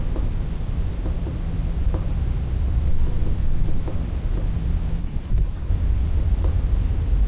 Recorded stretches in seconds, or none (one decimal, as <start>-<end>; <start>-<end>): 0.0-5.0; 5.7-7.3